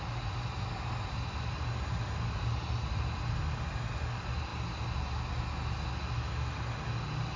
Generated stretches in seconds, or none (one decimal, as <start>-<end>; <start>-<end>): none